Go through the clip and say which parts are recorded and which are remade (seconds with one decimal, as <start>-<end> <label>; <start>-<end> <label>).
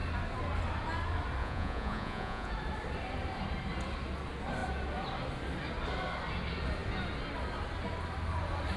0.0-1.4 recorded; 1.4-2.5 remade; 2.5-8.8 recorded